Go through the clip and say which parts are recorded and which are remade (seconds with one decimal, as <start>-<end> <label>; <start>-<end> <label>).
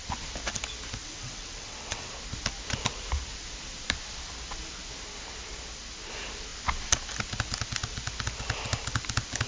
0.0-1.0 recorded; 1.0-2.1 remade; 2.1-9.5 recorded